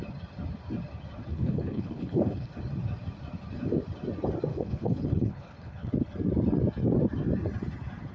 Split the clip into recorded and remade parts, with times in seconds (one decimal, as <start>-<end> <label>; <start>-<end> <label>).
0.0-1.3 recorded; 1.3-2.5 remade; 2.5-4.5 recorded; 4.5-5.9 remade; 5.9-8.1 recorded